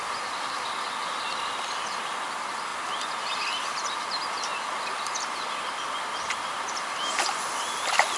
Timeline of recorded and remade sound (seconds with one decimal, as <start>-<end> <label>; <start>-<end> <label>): 0.0-8.2 recorded